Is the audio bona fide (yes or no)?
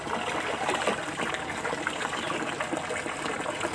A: yes